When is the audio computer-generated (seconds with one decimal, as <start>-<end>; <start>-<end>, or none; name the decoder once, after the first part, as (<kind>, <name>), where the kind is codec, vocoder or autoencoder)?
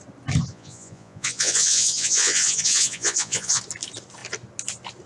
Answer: 0.5-3.6 (vocoder, Vocos)